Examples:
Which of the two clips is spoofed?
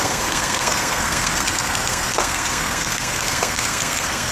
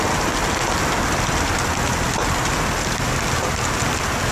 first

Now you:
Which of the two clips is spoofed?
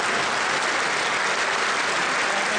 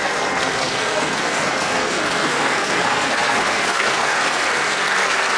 second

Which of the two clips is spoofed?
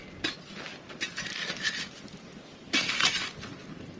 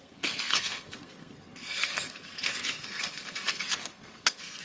second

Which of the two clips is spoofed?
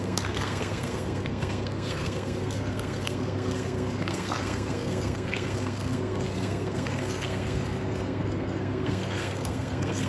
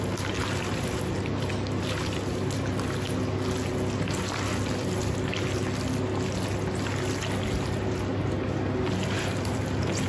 first